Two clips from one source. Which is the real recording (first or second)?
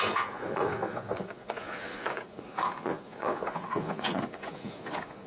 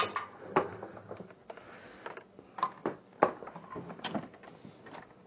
second